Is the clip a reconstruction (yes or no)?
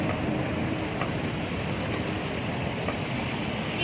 no